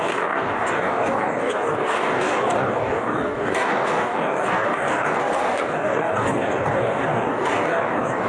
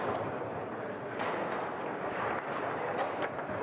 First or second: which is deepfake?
first